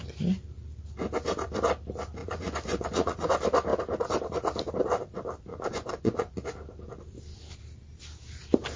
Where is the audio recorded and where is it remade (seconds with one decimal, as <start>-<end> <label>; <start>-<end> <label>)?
0.0-2.2 recorded; 2.2-3.3 remade; 3.3-5.5 recorded; 5.5-6.3 remade; 6.3-8.8 recorded